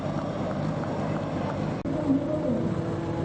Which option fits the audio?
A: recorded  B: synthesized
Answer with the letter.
A